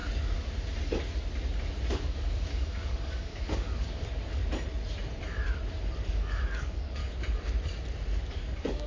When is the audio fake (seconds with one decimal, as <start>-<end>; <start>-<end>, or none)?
1.9-4.4; 6.1-7.0; 8.3-8.9